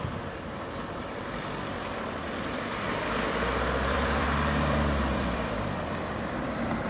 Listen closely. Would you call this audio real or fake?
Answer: fake